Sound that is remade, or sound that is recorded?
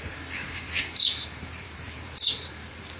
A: remade